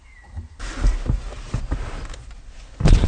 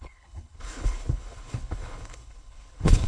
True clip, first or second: first